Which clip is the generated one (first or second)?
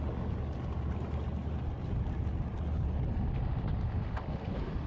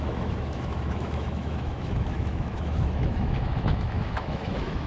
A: second